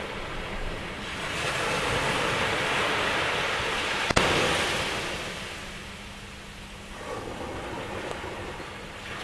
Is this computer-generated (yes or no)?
no